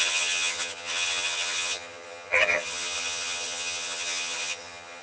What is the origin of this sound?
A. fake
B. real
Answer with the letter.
A